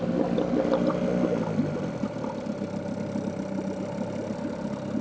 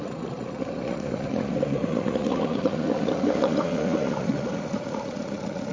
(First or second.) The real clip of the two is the first